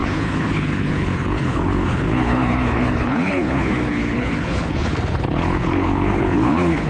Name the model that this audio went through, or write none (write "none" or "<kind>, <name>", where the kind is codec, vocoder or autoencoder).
codec, HILCodec